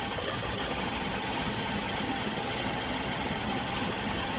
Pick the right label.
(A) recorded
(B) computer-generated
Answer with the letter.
B